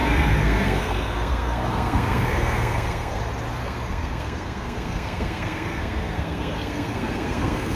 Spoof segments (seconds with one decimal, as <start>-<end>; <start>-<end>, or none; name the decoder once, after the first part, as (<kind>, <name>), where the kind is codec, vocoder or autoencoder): 0.0-3.2 (codec, SNAC); 3.6-7.8